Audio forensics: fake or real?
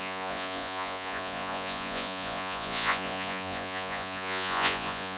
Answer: fake